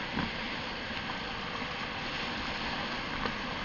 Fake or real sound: real